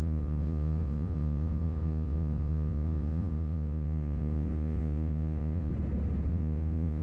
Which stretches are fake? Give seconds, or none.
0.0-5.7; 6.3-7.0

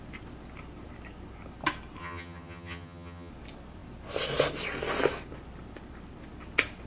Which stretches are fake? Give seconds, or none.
2.0-3.3

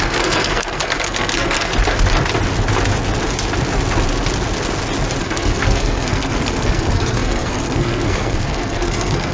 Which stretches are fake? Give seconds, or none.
0.0-1.7; 5.2-9.3

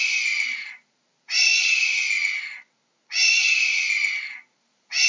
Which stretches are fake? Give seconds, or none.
0.0-1.5; 4.6-5.1

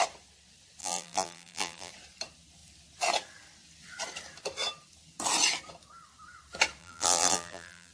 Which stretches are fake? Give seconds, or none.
0.8-1.9; 6.8-7.9

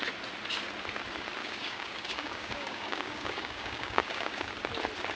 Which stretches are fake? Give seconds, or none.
1.4-4.5